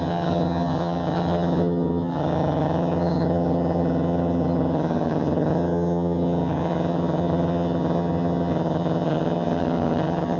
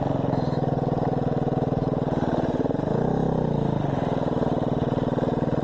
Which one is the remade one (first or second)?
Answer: first